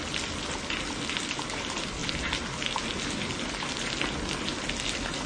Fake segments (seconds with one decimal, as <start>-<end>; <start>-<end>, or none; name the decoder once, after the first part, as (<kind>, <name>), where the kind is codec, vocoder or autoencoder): none